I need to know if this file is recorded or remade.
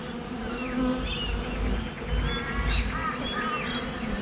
recorded